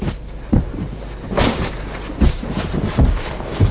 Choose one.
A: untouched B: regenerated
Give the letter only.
B